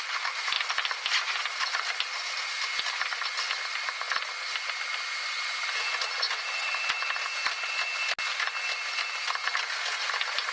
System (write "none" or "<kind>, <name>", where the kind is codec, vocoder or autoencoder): none